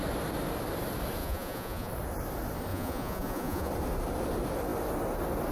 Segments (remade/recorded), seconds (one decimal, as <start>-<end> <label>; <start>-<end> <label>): 0.0-1.2 recorded; 1.2-1.9 remade; 1.9-2.7 recorded; 2.7-3.7 remade; 3.7-5.5 recorded